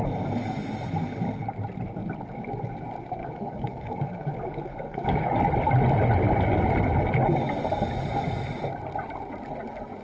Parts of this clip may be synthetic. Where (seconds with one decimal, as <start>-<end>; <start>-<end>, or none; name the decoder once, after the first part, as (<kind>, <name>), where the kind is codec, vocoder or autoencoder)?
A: 3.2-5.4 (codec, DAC)